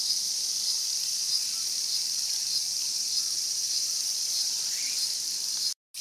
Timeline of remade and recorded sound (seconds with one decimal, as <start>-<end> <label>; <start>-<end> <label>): 0.0-1.2 recorded; 1.2-4.8 remade; 4.8-6.0 recorded